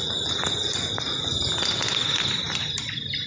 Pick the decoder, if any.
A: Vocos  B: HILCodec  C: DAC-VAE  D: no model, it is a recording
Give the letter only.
D